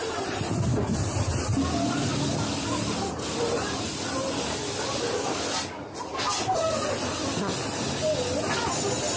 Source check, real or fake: real